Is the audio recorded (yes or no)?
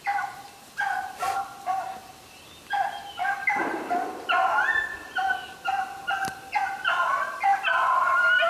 yes